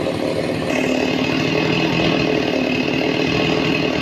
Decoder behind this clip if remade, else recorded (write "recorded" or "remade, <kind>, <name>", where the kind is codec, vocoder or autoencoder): recorded